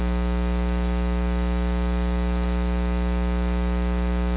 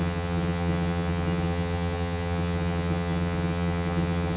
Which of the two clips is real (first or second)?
first